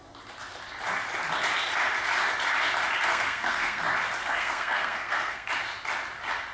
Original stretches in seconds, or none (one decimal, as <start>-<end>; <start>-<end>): 0.0-3.1; 3.8-4.2; 5.5-6.5